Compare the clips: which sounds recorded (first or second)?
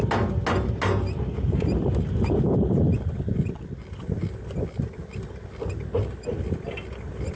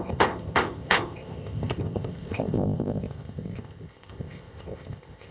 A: first